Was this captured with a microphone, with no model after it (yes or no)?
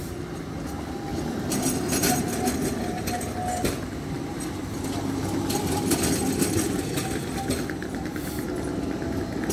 yes